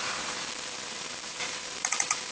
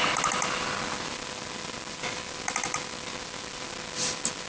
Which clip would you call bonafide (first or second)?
second